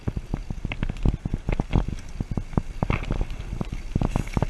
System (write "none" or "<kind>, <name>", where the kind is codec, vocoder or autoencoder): none